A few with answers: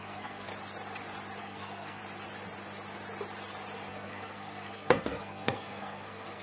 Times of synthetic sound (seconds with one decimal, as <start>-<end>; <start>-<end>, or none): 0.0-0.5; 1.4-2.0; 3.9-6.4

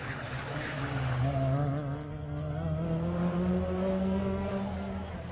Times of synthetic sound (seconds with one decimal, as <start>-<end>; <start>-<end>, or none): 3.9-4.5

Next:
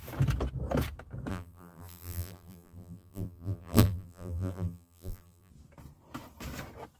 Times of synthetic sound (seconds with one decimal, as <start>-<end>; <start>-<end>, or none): 1.3-5.5

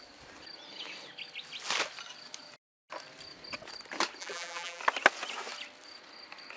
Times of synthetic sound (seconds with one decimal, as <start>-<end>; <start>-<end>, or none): 4.2-4.8

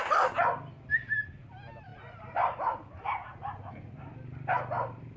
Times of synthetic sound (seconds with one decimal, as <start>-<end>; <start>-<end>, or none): none

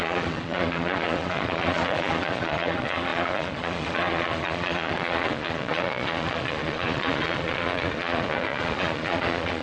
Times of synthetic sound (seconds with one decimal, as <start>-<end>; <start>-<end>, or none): 0.0-9.6

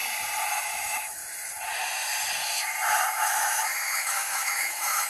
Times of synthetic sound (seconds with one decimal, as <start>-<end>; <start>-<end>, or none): 0.6-1.2; 3.1-5.1

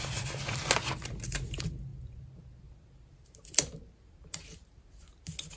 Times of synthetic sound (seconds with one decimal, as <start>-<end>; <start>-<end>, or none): none